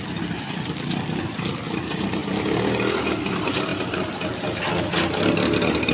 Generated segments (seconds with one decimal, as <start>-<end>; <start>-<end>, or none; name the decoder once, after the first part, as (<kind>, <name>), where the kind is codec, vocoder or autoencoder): none